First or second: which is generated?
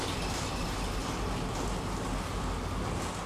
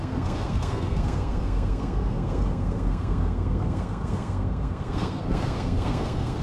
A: second